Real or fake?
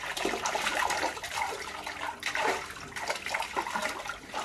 real